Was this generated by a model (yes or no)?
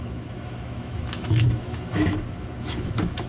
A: yes